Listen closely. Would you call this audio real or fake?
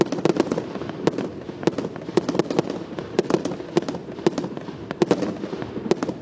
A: real